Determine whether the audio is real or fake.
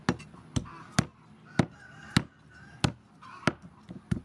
real